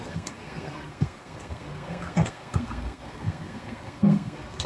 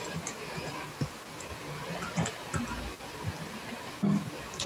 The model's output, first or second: first